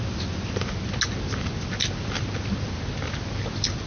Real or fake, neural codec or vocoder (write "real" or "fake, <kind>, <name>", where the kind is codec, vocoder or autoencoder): real